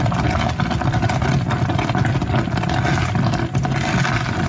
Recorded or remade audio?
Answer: recorded